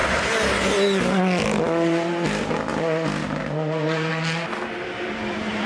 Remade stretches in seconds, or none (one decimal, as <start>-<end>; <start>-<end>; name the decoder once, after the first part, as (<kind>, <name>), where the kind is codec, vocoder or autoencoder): 3.4-4.1 (vocoder, BigVGAN v2); 5.3-5.7